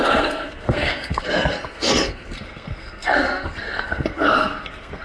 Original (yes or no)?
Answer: no